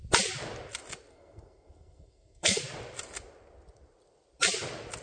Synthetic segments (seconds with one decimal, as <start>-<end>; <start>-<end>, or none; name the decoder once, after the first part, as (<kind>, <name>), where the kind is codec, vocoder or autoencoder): 1.1-2.6 (codec, SNAC)